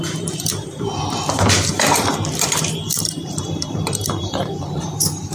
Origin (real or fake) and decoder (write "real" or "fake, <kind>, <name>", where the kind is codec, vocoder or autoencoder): fake, vocoder, BigVGAN v2